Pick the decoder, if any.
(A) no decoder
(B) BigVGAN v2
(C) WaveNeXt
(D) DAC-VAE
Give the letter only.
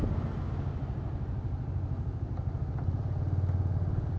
A